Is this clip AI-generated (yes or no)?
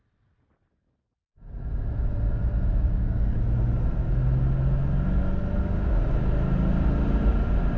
no